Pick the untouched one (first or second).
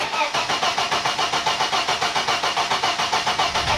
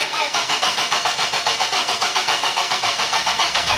first